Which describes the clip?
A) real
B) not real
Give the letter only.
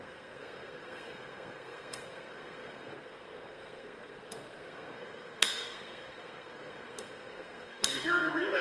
B